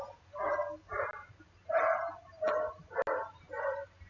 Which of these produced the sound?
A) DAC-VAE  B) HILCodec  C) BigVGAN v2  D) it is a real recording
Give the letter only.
D